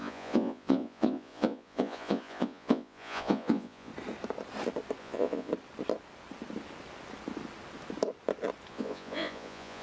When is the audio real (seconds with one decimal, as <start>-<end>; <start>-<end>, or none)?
3.9-5.0; 5.5-8.7